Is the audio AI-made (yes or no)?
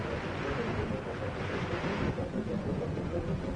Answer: yes